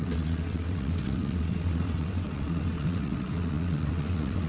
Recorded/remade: remade